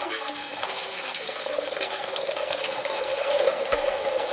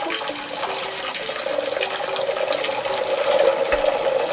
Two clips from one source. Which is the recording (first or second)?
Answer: second